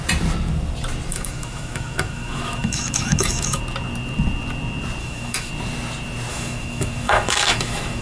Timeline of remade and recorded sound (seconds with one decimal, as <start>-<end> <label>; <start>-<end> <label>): 0.0-1.1 recorded; 1.1-3.6 remade; 3.6-5.0 recorded; 5.0-5.5 remade; 5.5-6.3 recorded; 6.3-8.0 remade